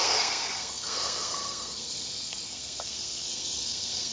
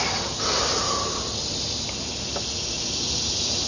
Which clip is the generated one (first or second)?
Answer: first